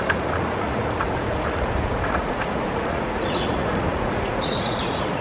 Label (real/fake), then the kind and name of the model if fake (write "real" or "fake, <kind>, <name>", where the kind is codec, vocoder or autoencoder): fake, vocoder, Vocos